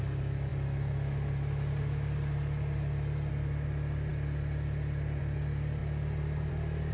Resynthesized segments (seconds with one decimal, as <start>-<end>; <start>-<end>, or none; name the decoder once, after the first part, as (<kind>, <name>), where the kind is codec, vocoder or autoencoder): none